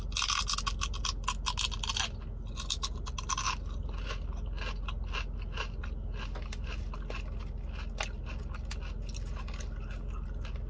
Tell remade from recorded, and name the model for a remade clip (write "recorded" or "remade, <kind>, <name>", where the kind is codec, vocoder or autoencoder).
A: recorded